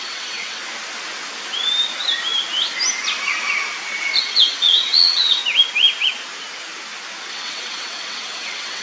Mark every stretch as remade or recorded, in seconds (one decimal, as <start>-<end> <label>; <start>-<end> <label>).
0.0-0.6 remade; 0.6-4.2 recorded; 4.2-5.4 remade; 5.4-7.3 recorded; 7.3-8.8 remade